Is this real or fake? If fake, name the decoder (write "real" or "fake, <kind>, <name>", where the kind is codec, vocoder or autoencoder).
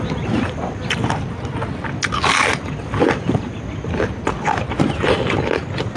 real